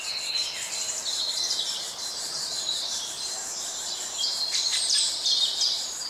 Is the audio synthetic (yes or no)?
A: yes